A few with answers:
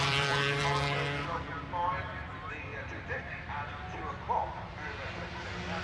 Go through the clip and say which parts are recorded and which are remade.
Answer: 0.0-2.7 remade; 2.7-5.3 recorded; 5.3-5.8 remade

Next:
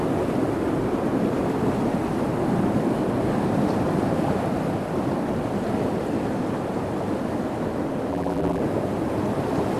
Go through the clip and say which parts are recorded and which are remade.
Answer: 0.0-8.1 recorded; 8.1-8.6 remade; 8.6-9.8 recorded

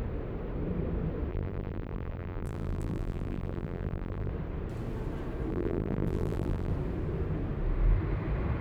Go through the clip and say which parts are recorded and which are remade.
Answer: 0.0-1.3 recorded; 1.3-4.3 remade; 4.3-5.5 recorded; 5.5-6.7 remade; 6.7-8.6 recorded

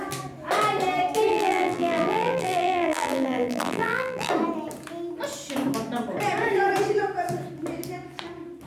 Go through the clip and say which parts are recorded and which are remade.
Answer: 0.0-1.3 recorded; 1.3-4.3 remade; 4.3-8.7 recorded

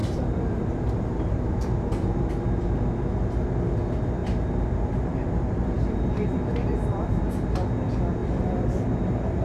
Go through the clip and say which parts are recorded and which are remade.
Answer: 0.0-2.3 remade; 2.3-4.2 recorded; 4.2-7.2 remade; 7.2-8.2 recorded; 8.2-8.7 remade; 8.7-9.4 recorded